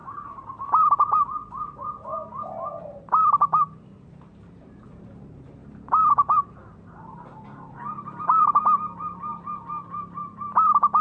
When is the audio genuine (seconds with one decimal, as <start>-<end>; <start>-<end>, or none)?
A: 2.1-4.1; 5.6-6.1; 9.3-10.6